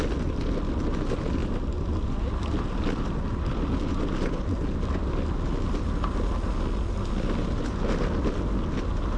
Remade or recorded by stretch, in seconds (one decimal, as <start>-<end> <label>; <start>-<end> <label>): 0.0-1.4 recorded; 1.4-2.7 remade; 2.7-9.2 recorded